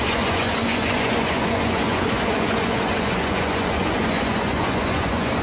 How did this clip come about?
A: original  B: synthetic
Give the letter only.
B